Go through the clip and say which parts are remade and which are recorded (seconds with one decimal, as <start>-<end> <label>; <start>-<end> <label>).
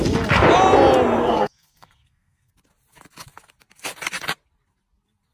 0.0-1.2 recorded; 1.2-2.5 remade; 2.5-5.3 recorded